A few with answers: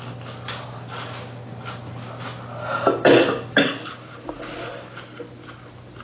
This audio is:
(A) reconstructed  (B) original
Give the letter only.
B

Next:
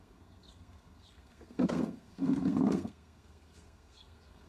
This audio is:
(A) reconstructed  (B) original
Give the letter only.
A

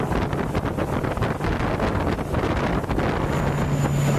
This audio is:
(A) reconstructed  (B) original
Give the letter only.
B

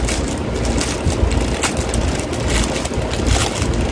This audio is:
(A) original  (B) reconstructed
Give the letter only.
A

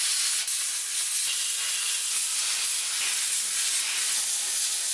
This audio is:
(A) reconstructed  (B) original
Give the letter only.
B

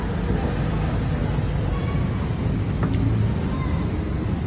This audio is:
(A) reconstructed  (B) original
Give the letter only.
B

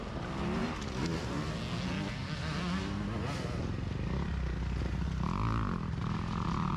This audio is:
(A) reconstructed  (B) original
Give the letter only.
B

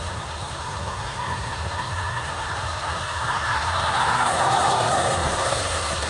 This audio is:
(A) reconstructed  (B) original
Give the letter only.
A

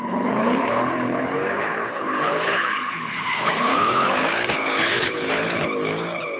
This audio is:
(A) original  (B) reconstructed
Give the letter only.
B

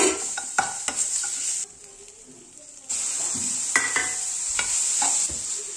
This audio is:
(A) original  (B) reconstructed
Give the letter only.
A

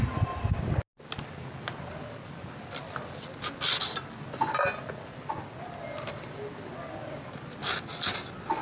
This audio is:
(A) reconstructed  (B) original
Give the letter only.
B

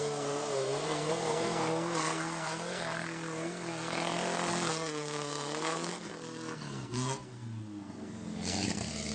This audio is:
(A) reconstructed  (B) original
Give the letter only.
A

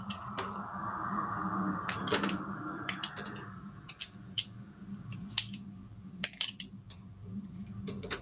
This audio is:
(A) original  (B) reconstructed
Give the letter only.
B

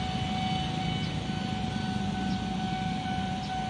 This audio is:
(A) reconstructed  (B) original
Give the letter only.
B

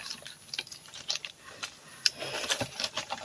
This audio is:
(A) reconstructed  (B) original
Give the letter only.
A